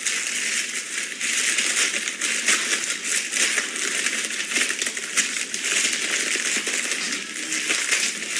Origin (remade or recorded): recorded